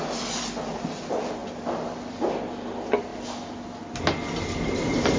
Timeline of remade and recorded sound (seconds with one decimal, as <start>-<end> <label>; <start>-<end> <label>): 0.0-5.2 recorded